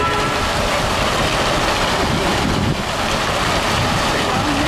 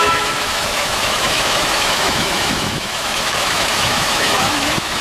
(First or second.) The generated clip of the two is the second